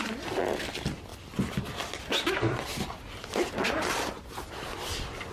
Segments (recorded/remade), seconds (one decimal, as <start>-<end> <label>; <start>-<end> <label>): 0.0-5.3 recorded